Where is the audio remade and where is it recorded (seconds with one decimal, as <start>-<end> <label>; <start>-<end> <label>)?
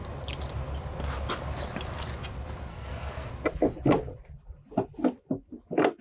0.0-2.7 recorded; 2.7-3.3 remade; 3.3-6.0 recorded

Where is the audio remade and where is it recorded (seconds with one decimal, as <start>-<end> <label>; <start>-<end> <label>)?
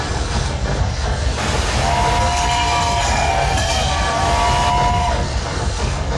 0.0-1.3 remade; 1.3-2.2 recorded; 2.2-4.2 remade; 4.2-4.9 recorded; 4.9-6.2 remade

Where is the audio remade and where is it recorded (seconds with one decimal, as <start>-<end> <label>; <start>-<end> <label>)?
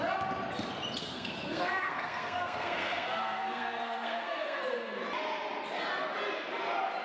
0.0-1.0 recorded; 1.0-5.0 remade; 5.0-7.0 recorded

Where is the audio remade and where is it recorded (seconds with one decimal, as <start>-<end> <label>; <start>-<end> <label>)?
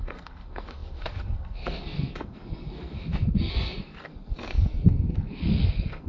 0.0-6.1 remade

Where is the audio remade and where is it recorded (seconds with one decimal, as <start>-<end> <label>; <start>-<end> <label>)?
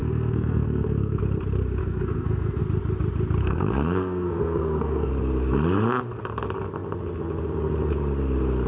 0.0-1.2 remade; 1.2-1.8 recorded; 1.8-2.6 remade; 2.6-3.4 recorded; 3.4-5.1 remade; 5.1-8.7 recorded